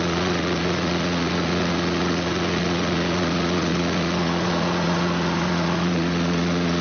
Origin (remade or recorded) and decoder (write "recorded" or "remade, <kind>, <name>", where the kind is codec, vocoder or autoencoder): remade, vocoder, Vocos